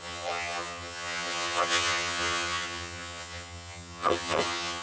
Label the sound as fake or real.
fake